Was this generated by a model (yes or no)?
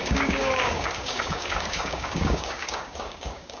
yes